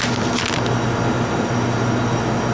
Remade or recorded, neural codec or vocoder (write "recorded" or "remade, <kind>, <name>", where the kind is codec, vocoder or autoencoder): recorded